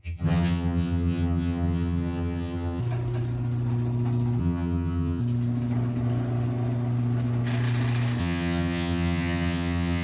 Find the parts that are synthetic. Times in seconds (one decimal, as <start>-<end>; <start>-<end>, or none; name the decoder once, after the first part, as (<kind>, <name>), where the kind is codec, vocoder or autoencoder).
0.0-2.8 (vocoder, HiFi-GAN); 4.4-5.2; 8.2-10.0